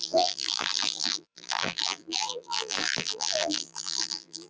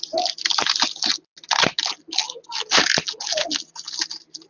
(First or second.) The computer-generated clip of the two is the first